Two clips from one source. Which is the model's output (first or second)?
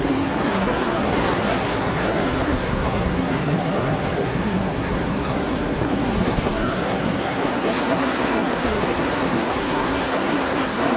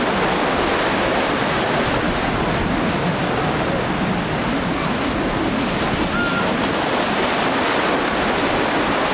first